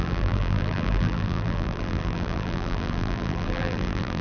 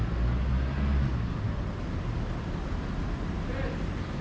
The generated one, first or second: first